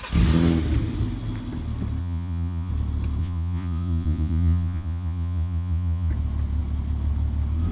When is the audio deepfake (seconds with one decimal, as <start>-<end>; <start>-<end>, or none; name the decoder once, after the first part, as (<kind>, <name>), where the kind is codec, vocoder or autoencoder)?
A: 2.0-2.7 (vocoder, Vocos); 3.2-6.1